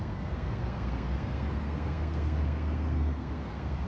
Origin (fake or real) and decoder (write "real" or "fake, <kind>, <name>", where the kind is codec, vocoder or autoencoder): fake, codec, SNAC